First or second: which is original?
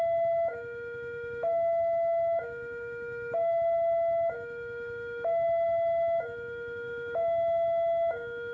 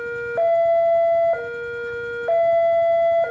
second